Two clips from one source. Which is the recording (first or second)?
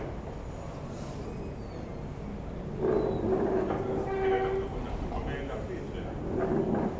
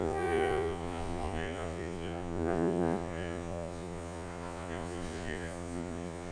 first